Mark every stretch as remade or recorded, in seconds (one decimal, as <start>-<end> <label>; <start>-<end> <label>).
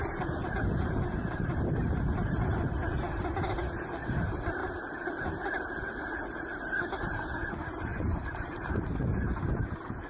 0.0-2.8 remade; 2.8-7.9 recorded; 7.9-8.9 remade; 8.9-10.1 recorded